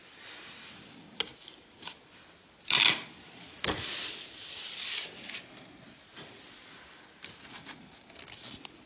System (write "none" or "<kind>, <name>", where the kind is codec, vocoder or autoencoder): none